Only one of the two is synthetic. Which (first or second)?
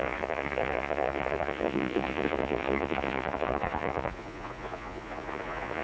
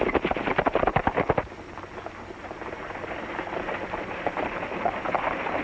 first